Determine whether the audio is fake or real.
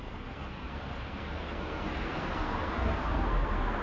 fake